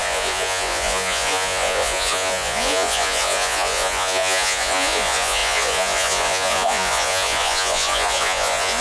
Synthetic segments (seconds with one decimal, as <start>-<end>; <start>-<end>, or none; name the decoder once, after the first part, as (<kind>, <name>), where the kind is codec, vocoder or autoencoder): 0.0-8.8 (vocoder, Vocos)